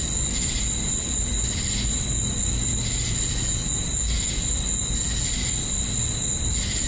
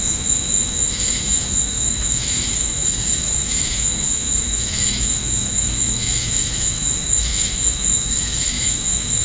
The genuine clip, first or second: first